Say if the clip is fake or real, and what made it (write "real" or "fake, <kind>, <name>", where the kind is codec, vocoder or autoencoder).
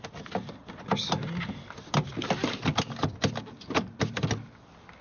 real